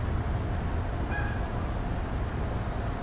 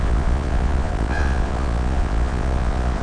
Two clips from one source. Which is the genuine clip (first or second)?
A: first